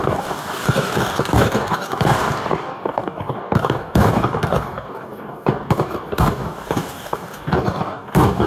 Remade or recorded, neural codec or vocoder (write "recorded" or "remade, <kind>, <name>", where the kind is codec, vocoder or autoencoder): remade, codec, DAC